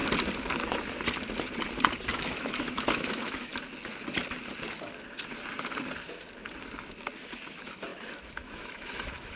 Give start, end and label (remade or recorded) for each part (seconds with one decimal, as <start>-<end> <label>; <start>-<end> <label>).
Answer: 0.0-2.1 recorded; 2.1-3.5 remade; 3.5-7.5 recorded; 7.5-9.4 remade